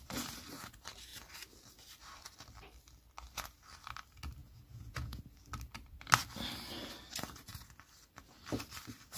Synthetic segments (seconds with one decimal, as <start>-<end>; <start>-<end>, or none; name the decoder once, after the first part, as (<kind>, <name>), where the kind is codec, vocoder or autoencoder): 4.4-5.2 (vocoder, Vocos)